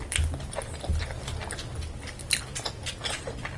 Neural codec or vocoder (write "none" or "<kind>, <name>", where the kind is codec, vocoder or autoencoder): none